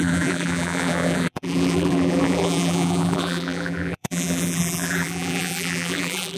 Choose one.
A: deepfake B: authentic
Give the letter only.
A